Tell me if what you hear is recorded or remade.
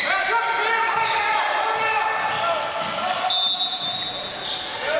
recorded